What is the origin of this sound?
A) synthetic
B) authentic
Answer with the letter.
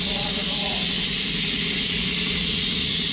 A